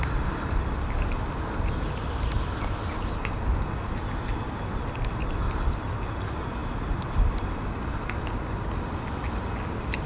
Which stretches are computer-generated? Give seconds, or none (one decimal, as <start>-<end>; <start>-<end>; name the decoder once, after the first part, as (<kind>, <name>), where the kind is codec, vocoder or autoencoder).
none

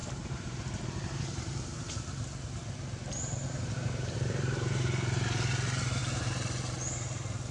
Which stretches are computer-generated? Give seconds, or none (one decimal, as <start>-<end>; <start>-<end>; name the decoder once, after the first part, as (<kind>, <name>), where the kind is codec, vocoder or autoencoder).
0.0-1.9 (vocoder, BigVGAN v2); 3.0-5.3

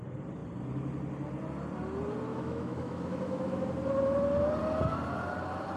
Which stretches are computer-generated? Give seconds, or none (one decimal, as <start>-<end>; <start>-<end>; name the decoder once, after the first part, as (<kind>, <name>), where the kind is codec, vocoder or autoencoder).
2.3-3.7 (autoencoder, DAC-VAE)